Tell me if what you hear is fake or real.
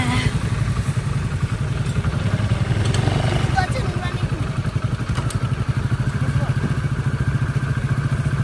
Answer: real